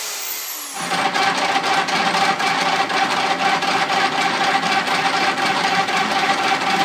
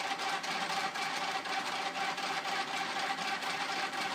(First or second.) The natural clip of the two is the first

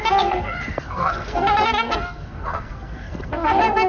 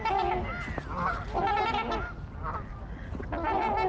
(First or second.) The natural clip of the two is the second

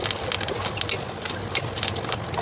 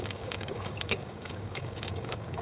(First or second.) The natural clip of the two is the first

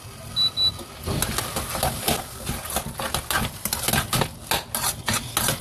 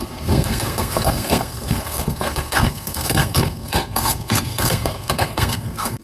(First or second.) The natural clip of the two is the first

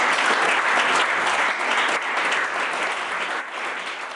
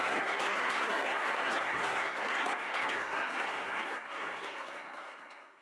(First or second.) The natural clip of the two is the first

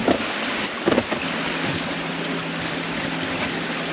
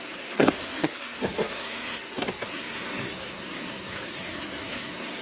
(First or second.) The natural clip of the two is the first